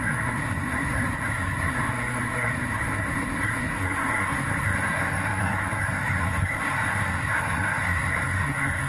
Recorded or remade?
remade